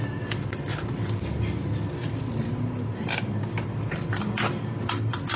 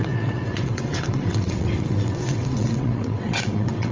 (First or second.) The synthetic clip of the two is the second